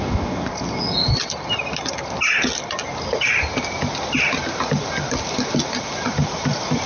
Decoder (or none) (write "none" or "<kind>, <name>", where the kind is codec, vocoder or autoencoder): none